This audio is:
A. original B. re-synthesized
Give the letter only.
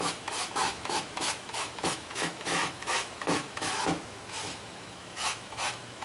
B